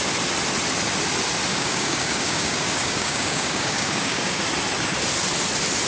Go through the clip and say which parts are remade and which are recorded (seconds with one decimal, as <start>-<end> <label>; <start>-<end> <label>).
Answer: 0.0-1.5 recorded; 1.5-4.4 remade; 4.4-5.9 recorded